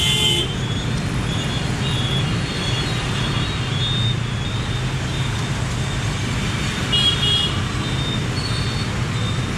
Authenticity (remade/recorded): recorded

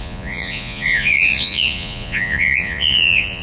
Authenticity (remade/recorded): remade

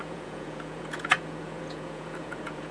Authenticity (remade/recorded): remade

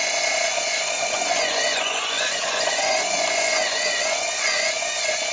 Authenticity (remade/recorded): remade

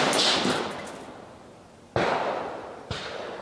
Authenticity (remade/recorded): recorded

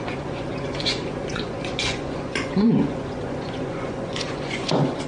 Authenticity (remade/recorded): remade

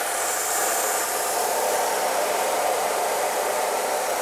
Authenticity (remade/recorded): remade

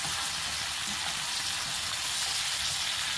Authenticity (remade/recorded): recorded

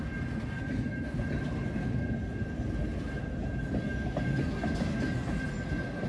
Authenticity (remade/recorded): recorded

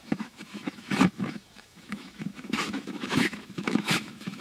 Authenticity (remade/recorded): remade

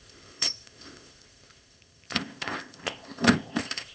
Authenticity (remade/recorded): remade